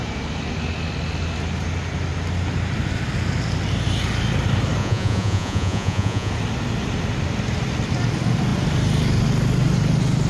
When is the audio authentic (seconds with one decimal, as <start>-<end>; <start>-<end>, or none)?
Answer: 0.0-4.8; 6.3-10.3